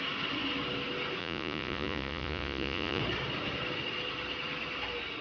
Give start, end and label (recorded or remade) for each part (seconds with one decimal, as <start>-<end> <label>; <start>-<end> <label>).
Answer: 0.0-1.2 recorded; 1.2-3.0 remade; 3.0-5.2 recorded

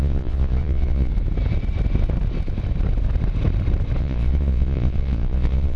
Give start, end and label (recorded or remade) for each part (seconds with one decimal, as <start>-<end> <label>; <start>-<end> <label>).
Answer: 0.0-1.1 remade; 1.1-4.0 recorded; 4.0-5.8 remade

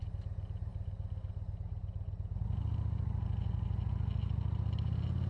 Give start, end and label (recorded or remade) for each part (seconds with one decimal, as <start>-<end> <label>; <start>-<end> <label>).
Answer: 0.0-5.3 recorded

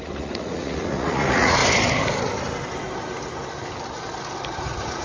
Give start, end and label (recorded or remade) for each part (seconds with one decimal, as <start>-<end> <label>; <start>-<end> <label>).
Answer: 0.0-1.6 remade; 1.6-4.6 recorded; 4.6-5.0 remade